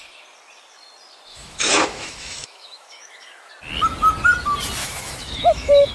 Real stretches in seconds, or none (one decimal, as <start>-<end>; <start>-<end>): 0.0-1.3; 3.5-4.8